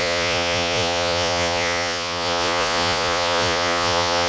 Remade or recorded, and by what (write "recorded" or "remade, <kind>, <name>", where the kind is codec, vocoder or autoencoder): remade, vocoder, Vocos